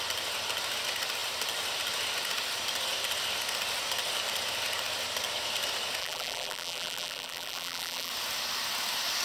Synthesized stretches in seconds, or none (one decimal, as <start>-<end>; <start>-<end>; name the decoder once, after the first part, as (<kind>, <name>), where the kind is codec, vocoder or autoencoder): 6.0-8.1 (vocoder, BigVGAN v2)